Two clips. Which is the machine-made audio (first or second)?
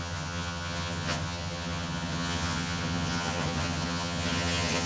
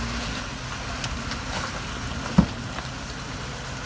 first